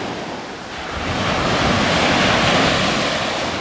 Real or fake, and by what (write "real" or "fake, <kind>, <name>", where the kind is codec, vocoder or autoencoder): real